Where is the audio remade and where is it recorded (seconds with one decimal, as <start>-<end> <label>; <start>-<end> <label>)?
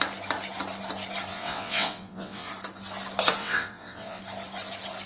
0.0-1.3 recorded; 1.3-2.5 remade; 2.5-3.4 recorded; 3.4-4.2 remade; 4.2-5.1 recorded